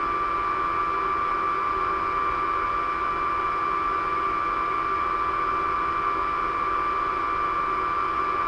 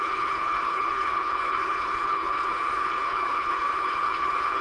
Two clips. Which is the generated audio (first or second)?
second